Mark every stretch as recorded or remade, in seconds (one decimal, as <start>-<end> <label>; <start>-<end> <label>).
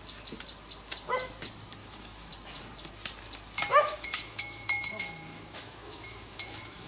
0.0-1.8 recorded; 1.8-2.3 remade; 2.3-3.7 recorded; 3.7-6.9 remade